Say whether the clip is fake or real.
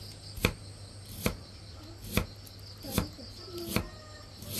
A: real